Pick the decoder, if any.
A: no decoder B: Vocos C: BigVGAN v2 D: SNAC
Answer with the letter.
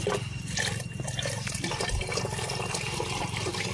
A